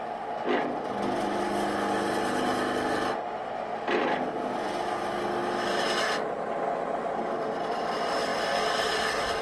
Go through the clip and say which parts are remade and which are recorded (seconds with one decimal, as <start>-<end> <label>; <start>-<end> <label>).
0.0-9.4 recorded